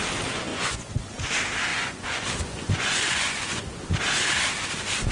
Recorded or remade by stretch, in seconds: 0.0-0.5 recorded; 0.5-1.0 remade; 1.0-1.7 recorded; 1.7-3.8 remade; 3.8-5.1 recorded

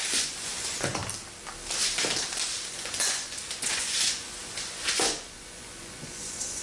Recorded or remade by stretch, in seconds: 0.0-1.0 remade; 1.0-2.7 recorded; 2.7-6.6 remade

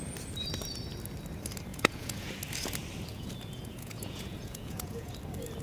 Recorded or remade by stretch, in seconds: 0.0-1.7 recorded; 1.7-2.3 remade; 2.3-3.1 recorded; 3.1-5.1 remade; 5.1-5.6 recorded

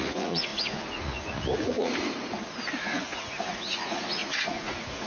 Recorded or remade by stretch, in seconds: 0.0-1.9 remade; 1.9-2.8 recorded; 2.8-5.1 remade